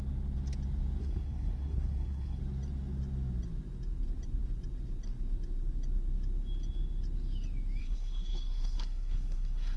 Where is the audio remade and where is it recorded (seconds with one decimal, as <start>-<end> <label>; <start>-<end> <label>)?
0.0-1.0 recorded; 1.0-2.4 remade; 2.4-7.8 recorded; 7.8-9.8 remade

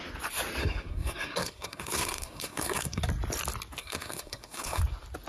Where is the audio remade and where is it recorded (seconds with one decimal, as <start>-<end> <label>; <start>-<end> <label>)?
0.0-0.6 recorded; 0.6-3.0 remade; 3.0-3.8 recorded; 3.8-4.8 remade; 4.8-5.3 recorded

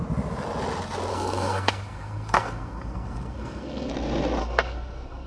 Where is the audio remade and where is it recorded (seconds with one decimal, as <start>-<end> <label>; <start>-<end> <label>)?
0.0-1.1 recorded; 1.1-3.9 remade; 3.9-4.4 recorded; 4.4-5.3 remade

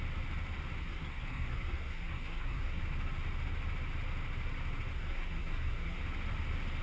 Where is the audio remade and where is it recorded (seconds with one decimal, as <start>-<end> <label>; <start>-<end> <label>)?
0.0-0.8 recorded; 0.8-2.8 remade; 2.8-4.9 recorded; 4.9-6.0 remade; 6.0-6.8 recorded

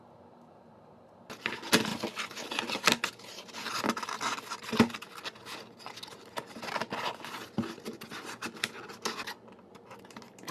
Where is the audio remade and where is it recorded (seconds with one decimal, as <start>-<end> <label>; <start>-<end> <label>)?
0.0-10.5 recorded

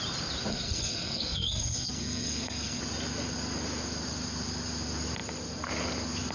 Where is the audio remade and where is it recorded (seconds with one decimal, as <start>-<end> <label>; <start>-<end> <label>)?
0.0-0.5 recorded; 0.5-2.8 remade; 2.8-6.3 recorded

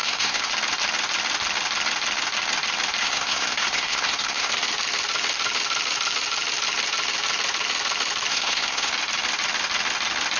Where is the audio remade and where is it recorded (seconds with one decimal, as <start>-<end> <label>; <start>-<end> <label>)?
0.0-0.5 remade; 0.5-3.0 recorded; 3.0-4.5 remade; 4.5-8.3 recorded; 8.3-8.9 remade; 8.9-10.4 recorded

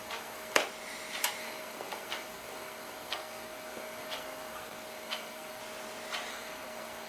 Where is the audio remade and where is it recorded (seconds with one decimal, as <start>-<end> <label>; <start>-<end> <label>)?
0.0-0.6 remade; 0.6-1.4 recorded; 1.4-5.6 remade; 5.6-6.3 recorded; 6.3-7.1 remade